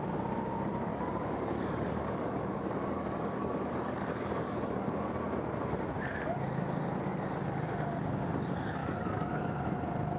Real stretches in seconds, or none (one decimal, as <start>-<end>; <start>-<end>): 0.0-0.9; 5.1-8.8; 9.6-10.2